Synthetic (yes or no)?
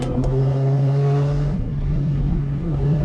yes